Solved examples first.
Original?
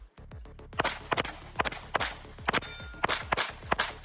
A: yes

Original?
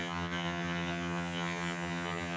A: no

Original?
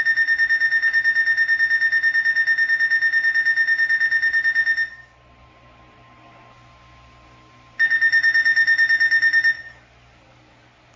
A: yes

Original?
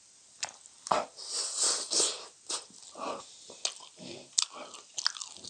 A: yes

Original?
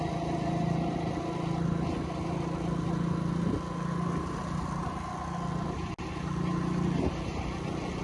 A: yes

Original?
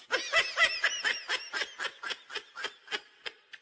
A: yes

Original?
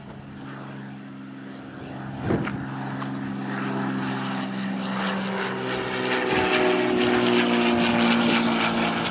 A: yes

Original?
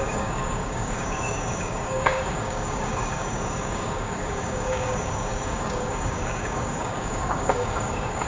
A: no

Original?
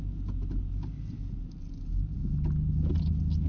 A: yes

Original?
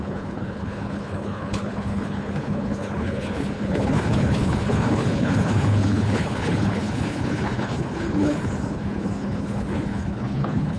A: no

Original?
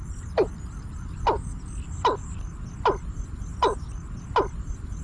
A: yes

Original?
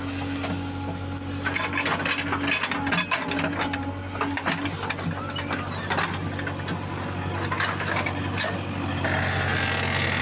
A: yes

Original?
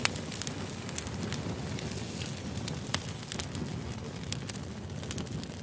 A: yes